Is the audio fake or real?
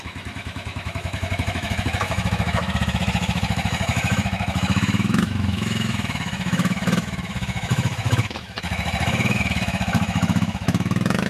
fake